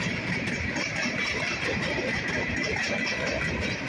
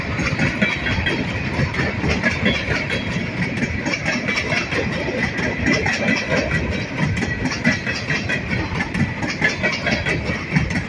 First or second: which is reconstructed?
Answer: first